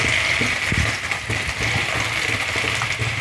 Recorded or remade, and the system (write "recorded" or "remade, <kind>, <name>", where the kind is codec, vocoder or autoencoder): recorded